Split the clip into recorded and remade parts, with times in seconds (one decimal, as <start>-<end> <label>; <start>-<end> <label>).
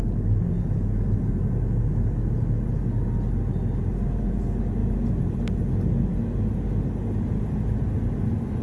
0.0-8.6 recorded